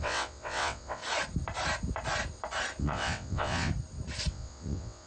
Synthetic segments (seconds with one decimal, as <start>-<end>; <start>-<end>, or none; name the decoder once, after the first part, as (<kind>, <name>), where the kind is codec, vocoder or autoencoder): 0.0-1.0 (vocoder, WaveNeXt); 2.8-3.7; 4.3-5.1